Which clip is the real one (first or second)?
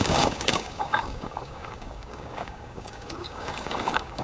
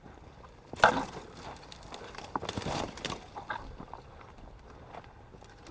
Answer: second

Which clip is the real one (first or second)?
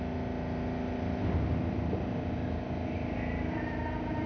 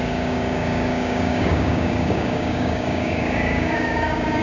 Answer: first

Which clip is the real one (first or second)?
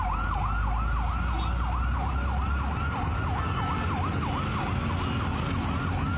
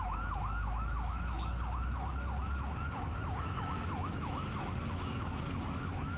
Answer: first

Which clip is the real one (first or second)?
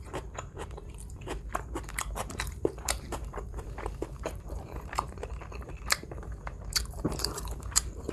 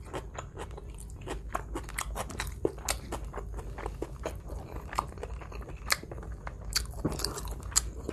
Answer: second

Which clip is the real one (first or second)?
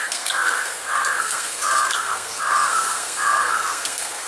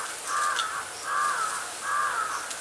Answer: second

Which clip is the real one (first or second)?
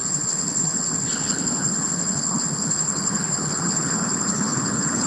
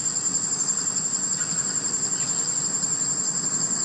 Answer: second